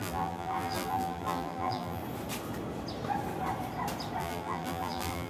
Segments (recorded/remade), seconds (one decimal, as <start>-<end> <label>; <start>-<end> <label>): 0.0-2.0 remade; 2.0-4.2 recorded; 4.2-5.3 remade